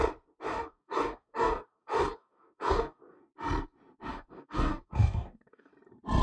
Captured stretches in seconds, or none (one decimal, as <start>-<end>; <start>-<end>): 0.0-0.5; 3.2-4.1; 5.7-6.2